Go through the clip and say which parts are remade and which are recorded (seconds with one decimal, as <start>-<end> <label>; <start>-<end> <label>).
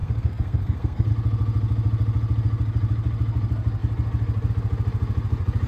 0.0-1.1 remade; 1.1-5.7 recorded